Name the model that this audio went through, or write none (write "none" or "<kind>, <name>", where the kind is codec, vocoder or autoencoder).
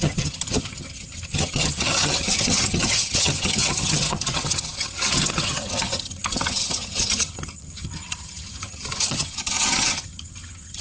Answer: vocoder, HiFi-GAN